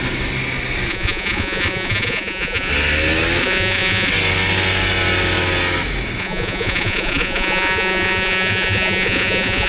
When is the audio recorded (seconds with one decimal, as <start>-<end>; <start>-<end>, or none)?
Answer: 0.0-0.9; 2.7-3.4; 4.1-6.2

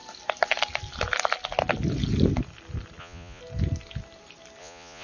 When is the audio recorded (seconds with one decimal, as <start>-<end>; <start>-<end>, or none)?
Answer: 0.0-3.0; 3.4-4.6

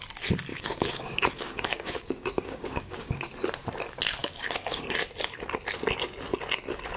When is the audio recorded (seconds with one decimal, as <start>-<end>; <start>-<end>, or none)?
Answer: 0.0-0.5; 3.2-4.2; 4.8-7.0

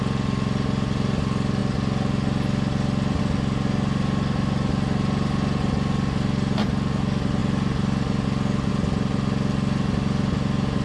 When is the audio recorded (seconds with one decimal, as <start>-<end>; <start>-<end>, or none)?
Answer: 0.0-10.8

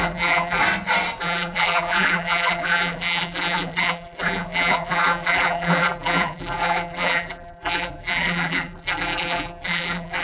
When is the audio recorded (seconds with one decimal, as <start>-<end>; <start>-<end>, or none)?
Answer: 0.6-1.2

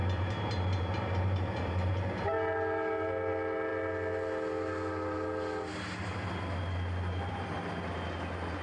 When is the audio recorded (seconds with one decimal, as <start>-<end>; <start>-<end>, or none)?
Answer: 1.9-8.6

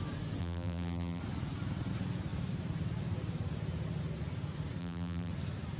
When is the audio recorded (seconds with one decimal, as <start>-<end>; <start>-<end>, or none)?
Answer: 0.0-0.4; 1.2-4.8; 5.3-5.8

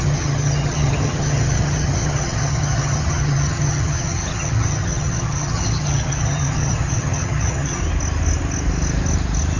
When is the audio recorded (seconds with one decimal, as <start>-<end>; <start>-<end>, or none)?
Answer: 7.8-9.6